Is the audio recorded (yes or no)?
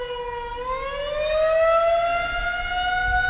yes